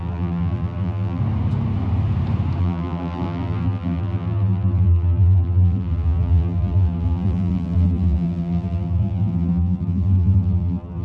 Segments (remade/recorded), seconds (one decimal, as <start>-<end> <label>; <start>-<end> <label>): 0.0-1.2 remade; 1.2-2.6 recorded; 2.6-11.0 remade